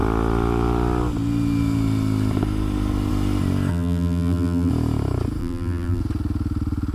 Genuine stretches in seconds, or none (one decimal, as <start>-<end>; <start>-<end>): 0.0-3.7; 4.7-5.4; 6.0-6.9